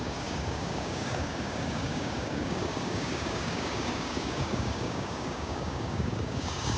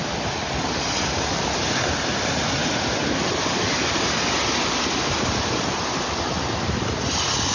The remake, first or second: first